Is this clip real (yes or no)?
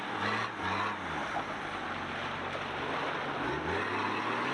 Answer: yes